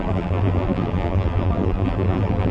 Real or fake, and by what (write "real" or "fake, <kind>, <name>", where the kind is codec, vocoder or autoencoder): fake, vocoder, BigVGAN v2